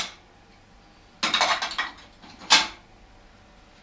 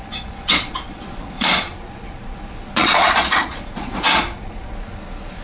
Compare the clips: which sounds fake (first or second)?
second